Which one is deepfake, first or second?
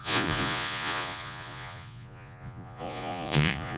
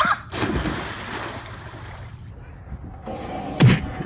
first